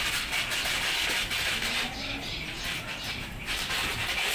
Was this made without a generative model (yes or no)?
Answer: yes